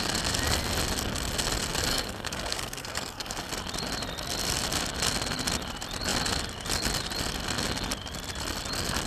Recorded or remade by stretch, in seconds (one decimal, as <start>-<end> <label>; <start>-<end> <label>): 0.0-1.9 recorded; 1.9-3.5 remade; 3.5-9.1 recorded